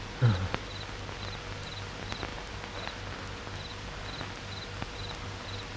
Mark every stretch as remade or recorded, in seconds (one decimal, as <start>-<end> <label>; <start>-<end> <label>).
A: 0.0-5.8 recorded